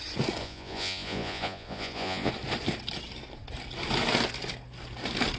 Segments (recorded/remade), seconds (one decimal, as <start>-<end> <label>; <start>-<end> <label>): 0.0-0.4 recorded; 0.4-2.3 remade; 2.3-5.4 recorded